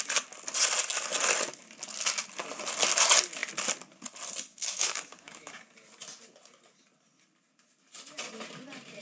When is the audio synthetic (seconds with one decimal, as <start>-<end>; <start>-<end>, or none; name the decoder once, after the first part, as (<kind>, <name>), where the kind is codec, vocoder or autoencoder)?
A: 4.5-5.6 (codec, DAC)